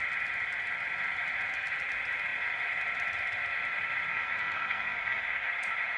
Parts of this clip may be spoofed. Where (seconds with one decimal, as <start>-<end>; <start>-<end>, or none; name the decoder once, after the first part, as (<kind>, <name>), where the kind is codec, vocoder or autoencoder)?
4.1-5.5 (codec, SNAC)